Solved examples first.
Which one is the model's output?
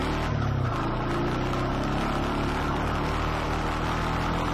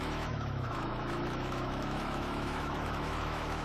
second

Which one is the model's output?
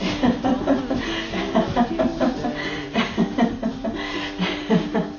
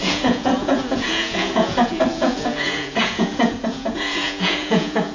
second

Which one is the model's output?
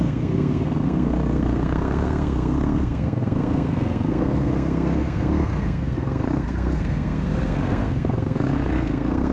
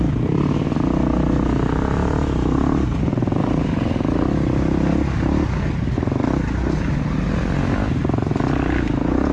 first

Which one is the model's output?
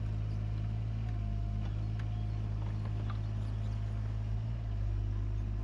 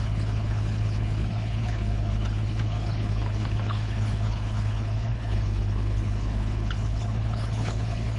second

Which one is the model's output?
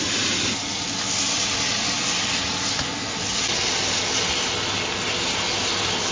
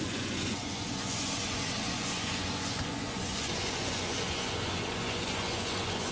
second